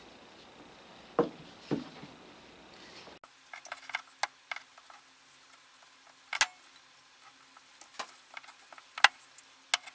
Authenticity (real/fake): real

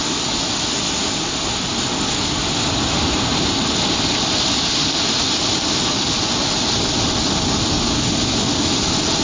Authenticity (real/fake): real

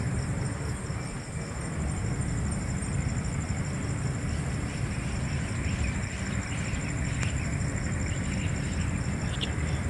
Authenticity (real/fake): real